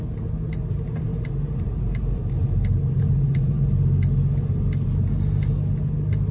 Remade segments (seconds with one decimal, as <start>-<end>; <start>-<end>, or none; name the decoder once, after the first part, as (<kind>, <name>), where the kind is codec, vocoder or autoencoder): 1.1-3.7 (vocoder, BigVGAN v2)